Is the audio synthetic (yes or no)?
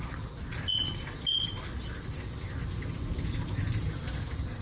no